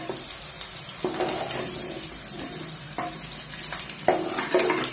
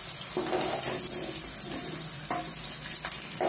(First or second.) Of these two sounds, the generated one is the first